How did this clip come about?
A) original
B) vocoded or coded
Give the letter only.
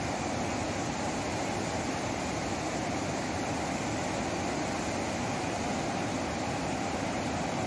A